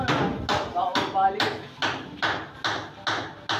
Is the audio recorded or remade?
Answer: recorded